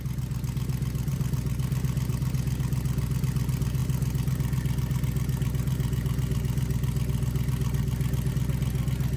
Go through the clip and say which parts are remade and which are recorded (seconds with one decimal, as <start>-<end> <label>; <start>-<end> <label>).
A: 0.0-9.2 recorded